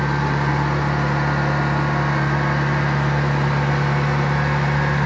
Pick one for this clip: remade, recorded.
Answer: recorded